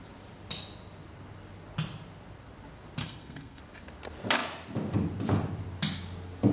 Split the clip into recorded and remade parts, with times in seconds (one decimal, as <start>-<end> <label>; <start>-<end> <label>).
0.0-3.0 recorded; 3.0-3.6 remade; 3.6-6.5 recorded